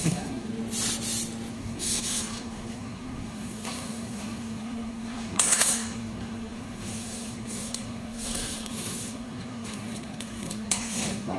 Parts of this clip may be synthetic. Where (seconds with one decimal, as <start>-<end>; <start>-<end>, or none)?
0.0-0.5; 1.5-11.4